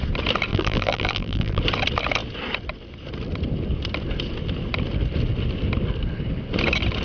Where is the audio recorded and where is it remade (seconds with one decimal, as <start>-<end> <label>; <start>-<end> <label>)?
0.0-0.5 recorded; 0.5-1.6 remade; 1.6-7.0 recorded